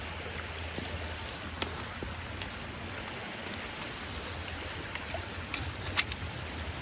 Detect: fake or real real